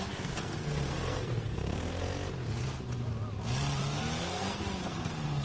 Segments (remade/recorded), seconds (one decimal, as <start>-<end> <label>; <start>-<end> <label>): 0.0-2.0 remade; 2.0-4.2 recorded; 4.2-5.4 remade